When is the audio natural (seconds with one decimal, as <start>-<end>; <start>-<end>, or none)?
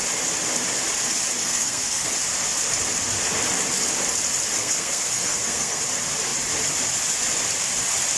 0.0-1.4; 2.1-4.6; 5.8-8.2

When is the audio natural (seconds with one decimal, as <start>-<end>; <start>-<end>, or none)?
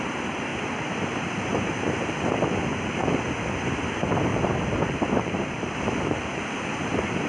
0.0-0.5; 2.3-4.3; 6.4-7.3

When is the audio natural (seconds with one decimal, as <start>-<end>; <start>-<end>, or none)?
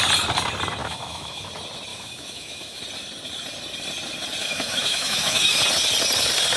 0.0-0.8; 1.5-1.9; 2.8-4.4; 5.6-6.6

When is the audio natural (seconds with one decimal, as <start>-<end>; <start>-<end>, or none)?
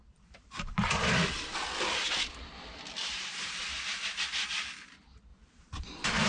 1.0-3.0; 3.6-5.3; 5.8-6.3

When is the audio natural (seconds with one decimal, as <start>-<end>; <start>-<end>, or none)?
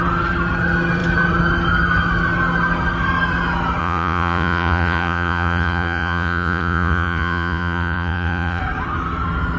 0.0-3.8; 8.6-9.6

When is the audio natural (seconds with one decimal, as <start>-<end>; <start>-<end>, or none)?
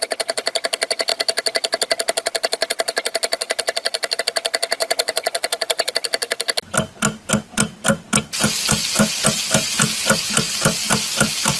0.0-4.8; 5.9-11.6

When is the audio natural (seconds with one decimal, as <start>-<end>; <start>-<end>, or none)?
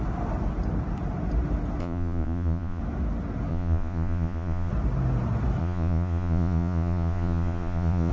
0.0-1.8; 2.8-3.5; 4.7-5.6